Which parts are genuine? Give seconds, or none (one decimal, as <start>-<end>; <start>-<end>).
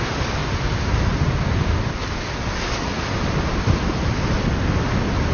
0.0-5.3